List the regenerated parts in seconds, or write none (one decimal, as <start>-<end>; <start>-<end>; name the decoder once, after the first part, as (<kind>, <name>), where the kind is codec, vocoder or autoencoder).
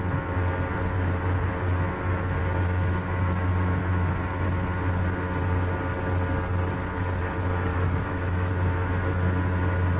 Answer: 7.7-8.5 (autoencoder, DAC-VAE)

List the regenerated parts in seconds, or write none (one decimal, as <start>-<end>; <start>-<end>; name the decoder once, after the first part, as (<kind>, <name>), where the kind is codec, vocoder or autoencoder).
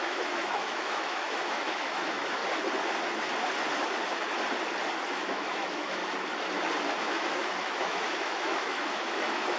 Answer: 0.0-2.4 (autoencoder, DAC-VAE); 5.1-6.0; 7.0-9.6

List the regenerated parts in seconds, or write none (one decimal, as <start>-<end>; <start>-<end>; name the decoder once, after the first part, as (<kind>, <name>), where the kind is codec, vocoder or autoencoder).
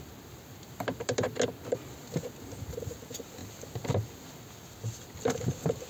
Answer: none